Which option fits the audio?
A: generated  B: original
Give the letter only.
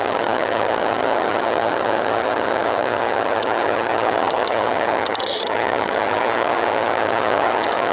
A